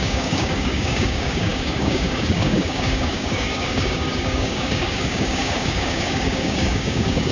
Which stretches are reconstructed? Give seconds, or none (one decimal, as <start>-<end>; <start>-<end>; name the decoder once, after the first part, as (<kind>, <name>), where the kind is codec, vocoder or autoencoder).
0.0-7.3 (codec, DAC)